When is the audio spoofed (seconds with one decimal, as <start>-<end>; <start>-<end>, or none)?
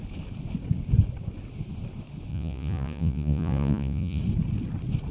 2.3-4.2